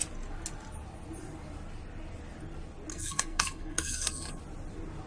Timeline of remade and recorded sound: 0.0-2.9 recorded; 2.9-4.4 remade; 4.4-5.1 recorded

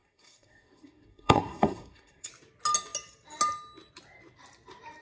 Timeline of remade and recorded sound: 0.0-2.3 remade; 2.3-5.0 recorded